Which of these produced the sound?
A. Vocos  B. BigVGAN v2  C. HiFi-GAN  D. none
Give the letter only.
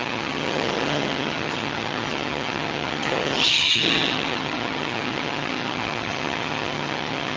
C